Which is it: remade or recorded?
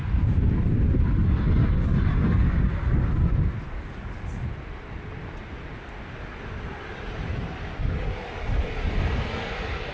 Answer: recorded